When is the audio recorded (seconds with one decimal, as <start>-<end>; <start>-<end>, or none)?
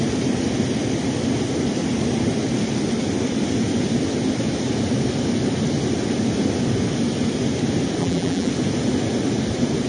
0.0-8.0; 8.5-9.9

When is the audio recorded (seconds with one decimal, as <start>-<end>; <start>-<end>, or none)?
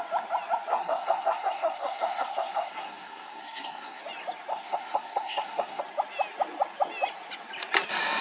0.0-0.7; 4.0-4.5; 5.8-8.2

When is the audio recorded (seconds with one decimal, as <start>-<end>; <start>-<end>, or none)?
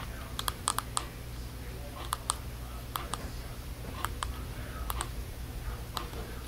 0.7-3.0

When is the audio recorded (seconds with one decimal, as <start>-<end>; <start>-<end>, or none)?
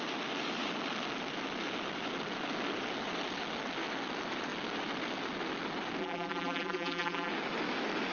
0.0-6.0; 7.3-8.1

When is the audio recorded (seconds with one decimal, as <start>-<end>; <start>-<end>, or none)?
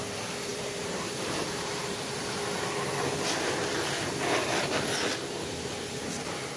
0.0-0.5; 2.2-6.6